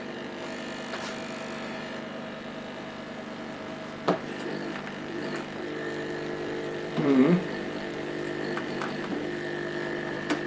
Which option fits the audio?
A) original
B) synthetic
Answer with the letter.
B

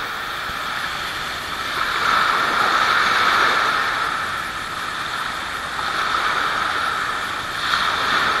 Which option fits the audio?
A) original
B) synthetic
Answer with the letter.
A